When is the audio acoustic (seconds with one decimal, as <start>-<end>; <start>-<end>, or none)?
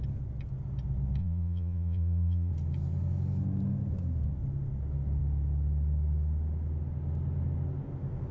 0.0-1.2; 2.5-8.3